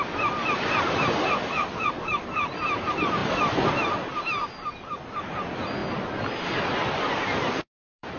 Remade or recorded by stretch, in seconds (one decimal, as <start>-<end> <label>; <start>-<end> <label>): 0.0-8.2 remade